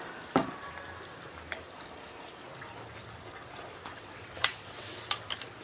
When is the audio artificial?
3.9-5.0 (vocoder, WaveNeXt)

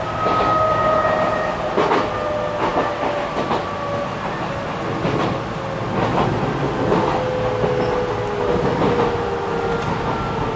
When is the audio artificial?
none